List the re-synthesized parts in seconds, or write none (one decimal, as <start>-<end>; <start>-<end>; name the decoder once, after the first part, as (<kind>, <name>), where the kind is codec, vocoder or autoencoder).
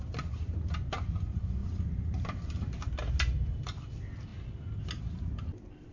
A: 0.0-4.3 (vocoder, BigVGAN v2); 5.0-5.9